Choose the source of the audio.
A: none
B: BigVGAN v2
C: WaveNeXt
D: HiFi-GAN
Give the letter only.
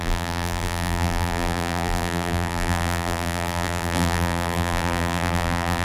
B